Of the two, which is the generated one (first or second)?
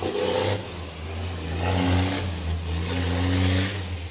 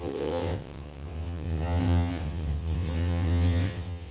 second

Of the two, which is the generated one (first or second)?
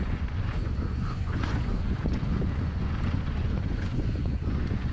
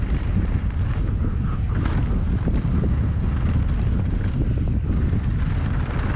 first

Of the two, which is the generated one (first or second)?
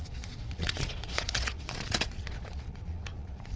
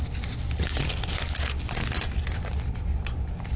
first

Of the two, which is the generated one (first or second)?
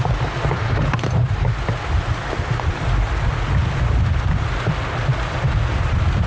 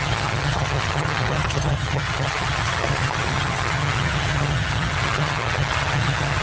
second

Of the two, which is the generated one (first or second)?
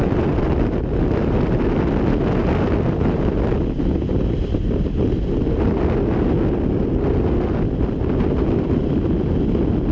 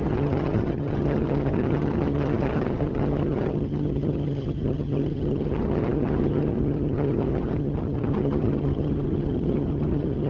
second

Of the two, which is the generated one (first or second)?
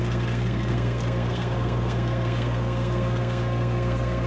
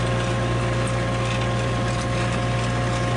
first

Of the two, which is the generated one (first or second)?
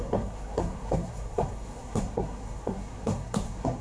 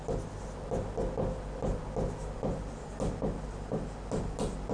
first